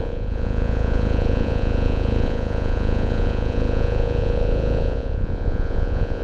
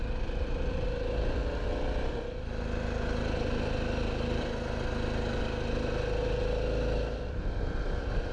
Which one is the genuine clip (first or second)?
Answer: second